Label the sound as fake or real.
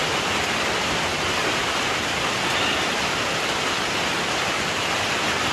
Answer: real